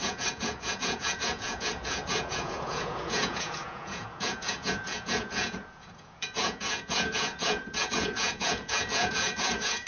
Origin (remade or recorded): remade